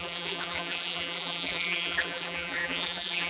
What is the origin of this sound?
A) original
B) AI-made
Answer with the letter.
B